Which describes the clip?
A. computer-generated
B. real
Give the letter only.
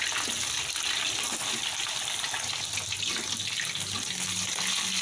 B